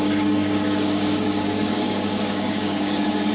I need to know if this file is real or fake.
fake